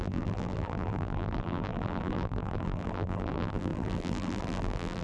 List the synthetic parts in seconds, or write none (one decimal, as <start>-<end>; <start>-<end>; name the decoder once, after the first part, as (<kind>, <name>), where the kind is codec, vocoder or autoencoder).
0.0-5.0 (vocoder, BigVGAN v2)